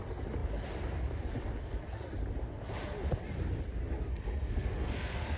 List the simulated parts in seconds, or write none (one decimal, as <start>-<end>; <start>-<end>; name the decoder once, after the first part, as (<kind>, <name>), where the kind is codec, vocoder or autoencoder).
4.1-5.4 (codec, SNAC)